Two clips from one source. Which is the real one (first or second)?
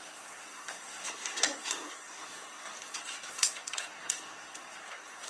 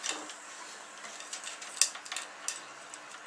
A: second